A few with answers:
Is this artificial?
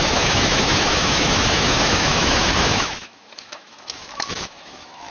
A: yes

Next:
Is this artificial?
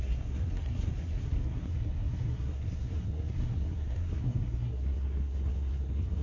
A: yes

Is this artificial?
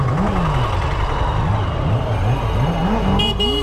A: no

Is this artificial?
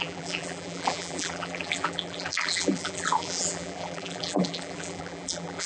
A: yes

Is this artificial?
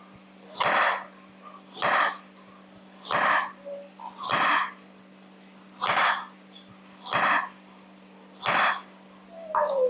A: no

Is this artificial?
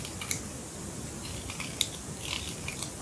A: no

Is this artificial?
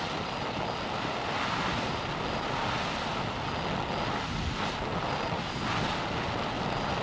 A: no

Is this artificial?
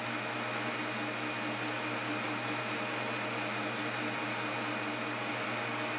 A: no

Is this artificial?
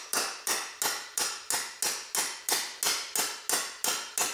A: no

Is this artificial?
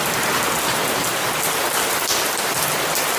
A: no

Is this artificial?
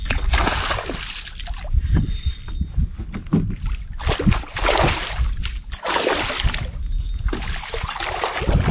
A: no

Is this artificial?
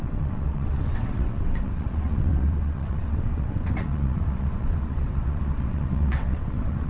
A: yes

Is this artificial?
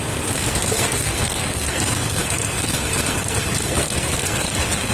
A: yes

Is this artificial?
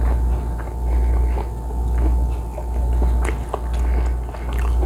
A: no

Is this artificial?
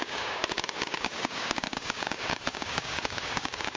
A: yes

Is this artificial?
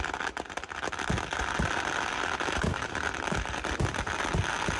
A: no